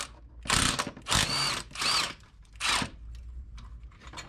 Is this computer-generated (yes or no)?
no